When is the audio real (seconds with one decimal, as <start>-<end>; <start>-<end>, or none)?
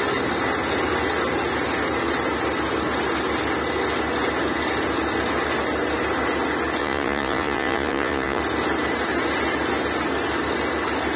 0.0-6.8; 8.4-11.2